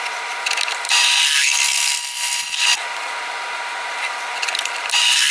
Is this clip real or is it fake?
real